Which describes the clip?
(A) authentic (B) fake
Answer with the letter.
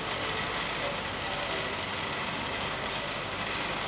A